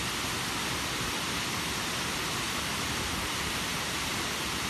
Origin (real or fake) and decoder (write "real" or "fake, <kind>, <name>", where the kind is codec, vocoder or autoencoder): real